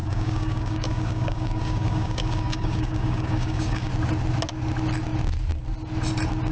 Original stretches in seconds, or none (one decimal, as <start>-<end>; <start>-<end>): 3.9-6.5